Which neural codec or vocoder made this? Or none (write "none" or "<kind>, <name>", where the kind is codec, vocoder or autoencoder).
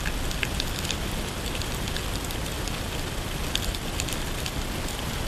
none